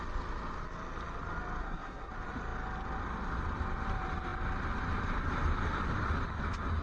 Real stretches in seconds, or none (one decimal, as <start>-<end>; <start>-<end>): 0.0-1.6; 2.1-6.8